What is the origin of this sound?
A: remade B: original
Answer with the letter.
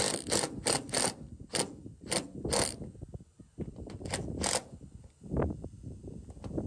B